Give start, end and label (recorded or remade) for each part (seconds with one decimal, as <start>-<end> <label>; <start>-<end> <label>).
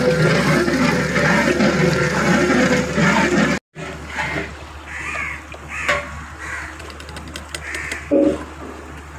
0.0-9.2 recorded